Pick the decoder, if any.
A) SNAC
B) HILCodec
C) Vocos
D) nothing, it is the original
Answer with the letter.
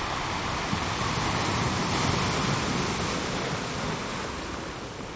D